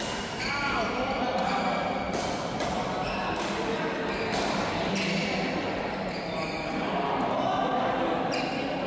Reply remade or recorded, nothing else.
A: recorded